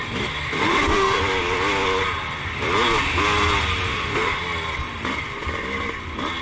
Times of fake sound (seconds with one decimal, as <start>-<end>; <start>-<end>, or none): 0.6-1.2; 3.9-4.4

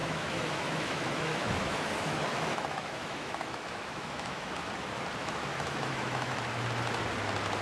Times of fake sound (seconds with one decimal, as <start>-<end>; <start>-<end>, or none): 0.0-4.6; 5.2-6.4

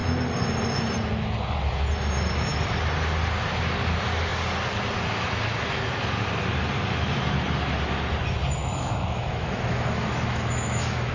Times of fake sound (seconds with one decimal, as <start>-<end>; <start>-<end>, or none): 8.6-11.1

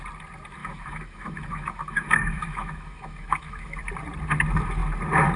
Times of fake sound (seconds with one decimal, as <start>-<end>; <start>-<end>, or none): 0.6-3.8

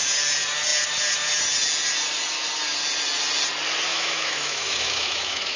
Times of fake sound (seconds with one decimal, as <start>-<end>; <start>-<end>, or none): 3.9-5.6

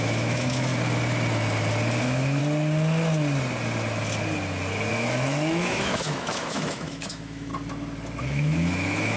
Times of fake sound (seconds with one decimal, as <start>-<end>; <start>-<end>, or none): 0.0-0.7; 2.0-2.4; 4.9-7.5; 8.2-9.2